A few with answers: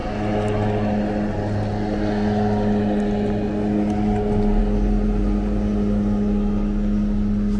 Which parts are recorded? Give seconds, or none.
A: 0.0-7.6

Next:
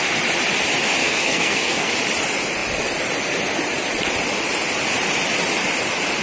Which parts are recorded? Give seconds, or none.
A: 0.0-1.0; 1.9-6.2

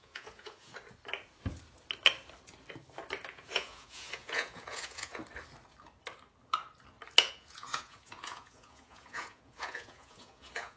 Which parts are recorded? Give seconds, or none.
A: 0.7-3.3; 5.2-7.2

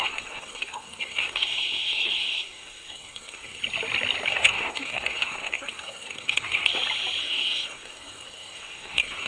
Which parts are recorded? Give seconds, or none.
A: 3.6-4.3; 6.7-7.2

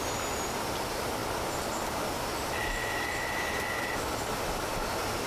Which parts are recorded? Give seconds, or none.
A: 0.0-5.3

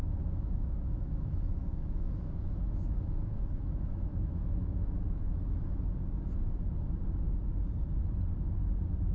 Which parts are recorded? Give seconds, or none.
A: 5.2-9.1

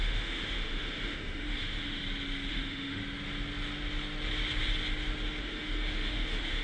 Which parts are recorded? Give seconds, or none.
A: 2.0-2.5; 3.0-5.4